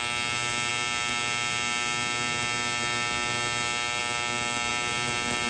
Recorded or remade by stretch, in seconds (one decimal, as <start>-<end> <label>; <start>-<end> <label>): 0.0-5.5 recorded